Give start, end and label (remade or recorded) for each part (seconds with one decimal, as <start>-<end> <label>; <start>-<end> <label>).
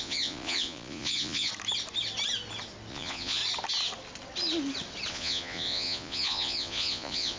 0.0-1.5 remade; 1.5-2.9 recorded; 2.9-3.4 remade; 3.4-5.1 recorded; 5.1-7.4 remade